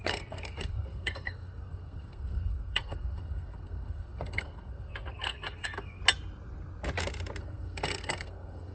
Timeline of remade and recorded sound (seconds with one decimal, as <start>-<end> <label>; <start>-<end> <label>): 0.0-6.0 remade; 6.0-7.4 recorded; 7.4-8.7 remade